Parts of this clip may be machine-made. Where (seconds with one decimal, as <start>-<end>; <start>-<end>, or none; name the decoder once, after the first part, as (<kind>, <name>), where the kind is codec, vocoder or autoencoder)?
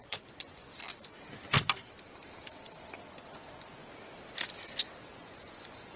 0.0-0.7 (vocoder, Vocos); 3.3-3.8; 5.0-6.0